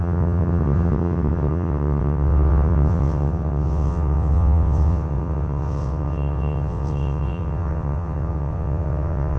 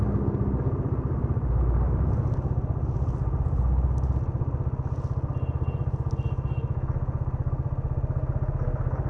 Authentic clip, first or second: second